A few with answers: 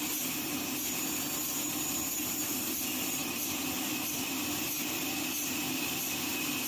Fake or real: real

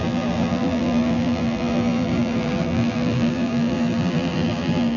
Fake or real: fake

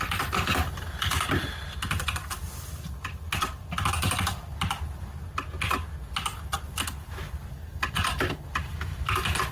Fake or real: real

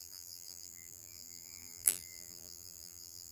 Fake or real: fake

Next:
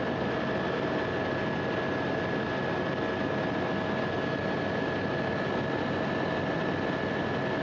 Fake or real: real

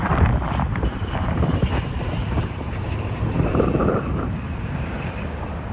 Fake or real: fake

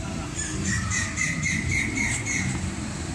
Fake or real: fake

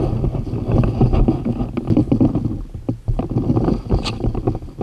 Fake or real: real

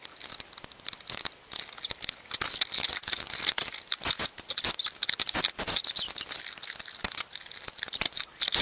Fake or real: real